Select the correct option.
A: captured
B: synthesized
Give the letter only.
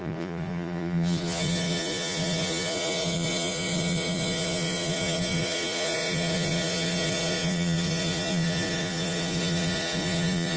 B